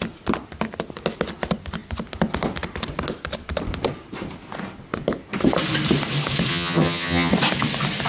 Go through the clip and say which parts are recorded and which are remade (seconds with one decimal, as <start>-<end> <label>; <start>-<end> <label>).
0.0-6.5 recorded; 6.5-7.3 remade; 7.3-8.1 recorded